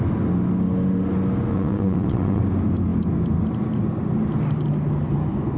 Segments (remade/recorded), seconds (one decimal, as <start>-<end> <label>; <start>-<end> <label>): 0.0-1.5 recorded; 1.5-2.4 remade; 2.4-5.6 recorded